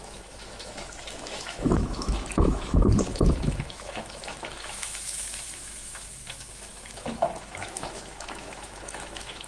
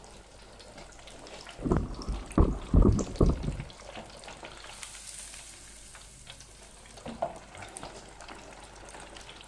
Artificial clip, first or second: first